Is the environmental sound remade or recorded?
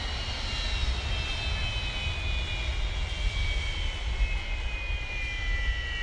recorded